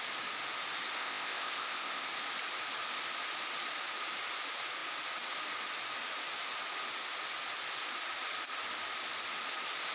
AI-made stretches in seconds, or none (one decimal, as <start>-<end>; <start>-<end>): 1.0-2.1